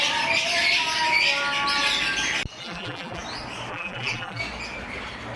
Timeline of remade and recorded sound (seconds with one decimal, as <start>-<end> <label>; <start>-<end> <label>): 0.0-2.6 recorded; 2.6-3.2 remade; 3.2-3.7 recorded; 3.7-4.4 remade; 4.4-5.4 recorded